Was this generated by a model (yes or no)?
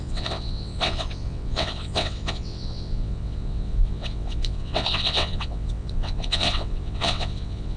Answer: yes